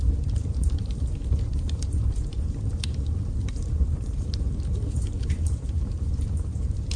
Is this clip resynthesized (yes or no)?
yes